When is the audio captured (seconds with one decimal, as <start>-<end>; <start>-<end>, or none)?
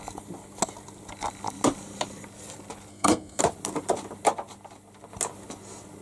0.0-2.9; 3.4-6.0